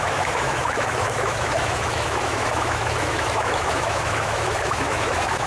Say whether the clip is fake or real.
fake